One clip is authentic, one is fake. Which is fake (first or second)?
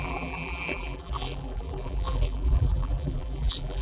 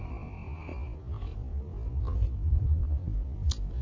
first